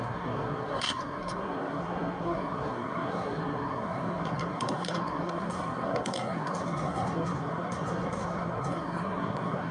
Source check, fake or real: fake